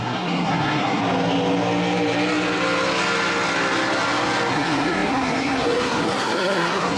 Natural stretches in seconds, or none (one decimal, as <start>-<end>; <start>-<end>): 1.0-4.5